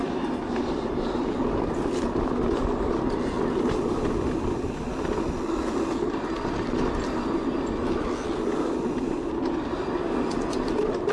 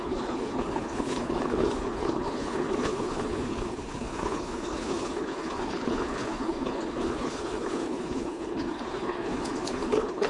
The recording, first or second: first